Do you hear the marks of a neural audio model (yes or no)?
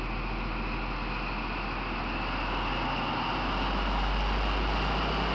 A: no